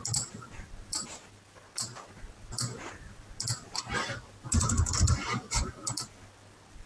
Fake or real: fake